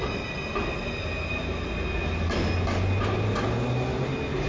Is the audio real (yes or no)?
yes